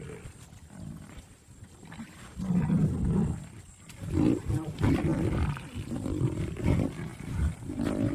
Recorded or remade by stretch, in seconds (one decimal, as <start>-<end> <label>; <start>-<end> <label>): 0.0-7.1 recorded; 7.1-8.1 remade